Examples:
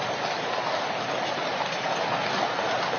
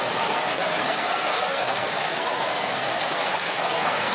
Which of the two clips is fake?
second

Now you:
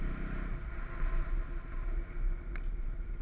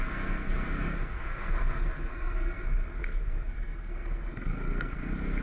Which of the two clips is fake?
second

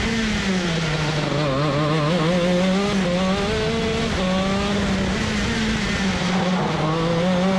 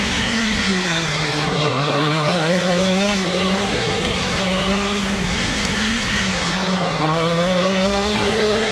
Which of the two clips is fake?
second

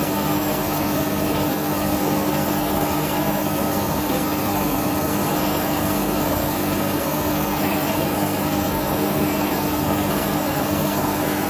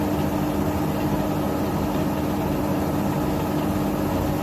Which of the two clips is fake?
first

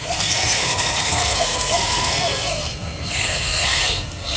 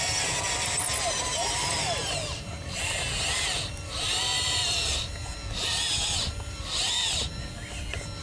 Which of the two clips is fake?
first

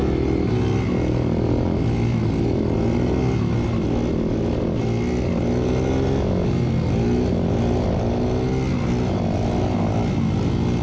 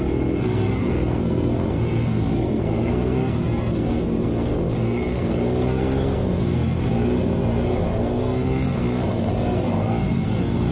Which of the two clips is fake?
second